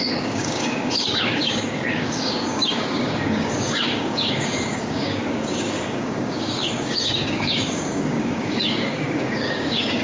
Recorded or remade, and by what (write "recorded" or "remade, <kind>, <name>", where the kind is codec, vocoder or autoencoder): remade, codec, DAC